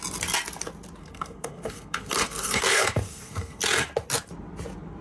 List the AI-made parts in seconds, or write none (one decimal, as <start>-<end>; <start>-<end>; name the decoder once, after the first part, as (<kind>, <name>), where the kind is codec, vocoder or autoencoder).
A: 1.0-3.6 (codec, SNAC)